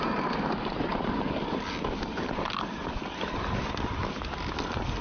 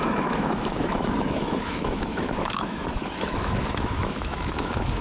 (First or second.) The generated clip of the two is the second